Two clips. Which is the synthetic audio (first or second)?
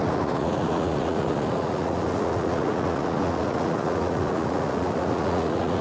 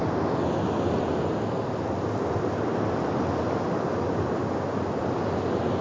first